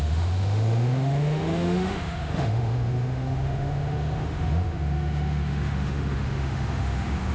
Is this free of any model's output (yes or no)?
no